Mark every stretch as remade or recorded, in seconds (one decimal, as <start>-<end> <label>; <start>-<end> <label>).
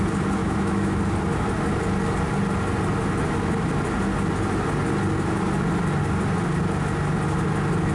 0.0-0.4 recorded; 0.4-1.0 remade; 1.0-7.9 recorded